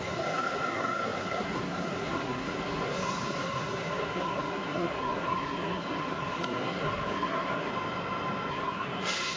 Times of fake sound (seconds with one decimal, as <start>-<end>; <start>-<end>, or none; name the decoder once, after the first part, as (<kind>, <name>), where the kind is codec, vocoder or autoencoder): 0.0-7.7 (codec, SNAC); 8.5-9.4